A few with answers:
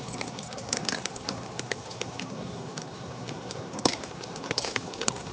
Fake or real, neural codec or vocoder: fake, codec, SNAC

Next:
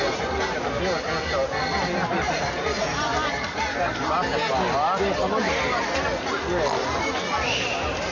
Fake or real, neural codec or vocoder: real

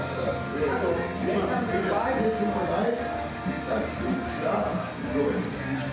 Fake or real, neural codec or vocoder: real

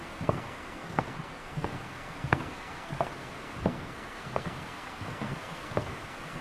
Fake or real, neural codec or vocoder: fake, codec, SNAC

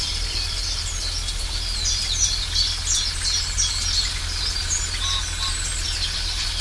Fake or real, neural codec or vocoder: real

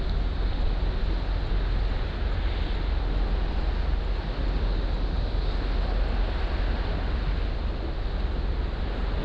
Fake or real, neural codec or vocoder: real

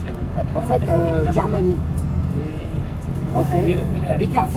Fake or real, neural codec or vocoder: fake, codec, SNAC